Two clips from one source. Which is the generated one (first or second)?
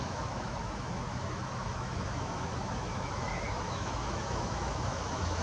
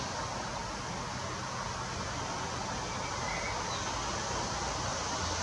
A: first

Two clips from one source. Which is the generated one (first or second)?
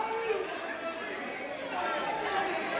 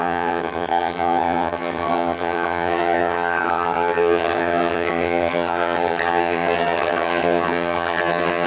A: second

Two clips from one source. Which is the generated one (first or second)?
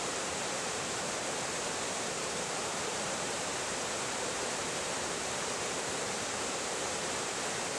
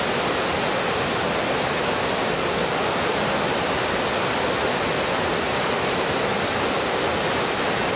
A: first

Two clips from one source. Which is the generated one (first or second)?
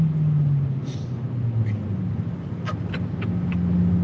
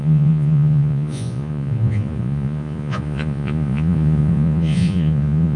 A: second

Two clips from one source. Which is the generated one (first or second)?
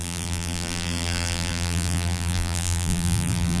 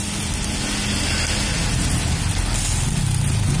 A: first